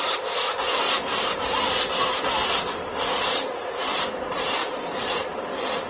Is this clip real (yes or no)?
no